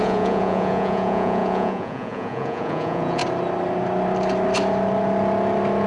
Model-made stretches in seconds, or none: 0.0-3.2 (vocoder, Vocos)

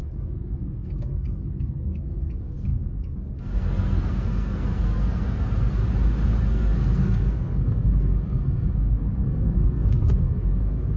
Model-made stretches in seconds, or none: 0.0-5.8 (codec, SNAC); 6.4-11.0